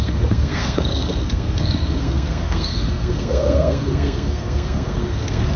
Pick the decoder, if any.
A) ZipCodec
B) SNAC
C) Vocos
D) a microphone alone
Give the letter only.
B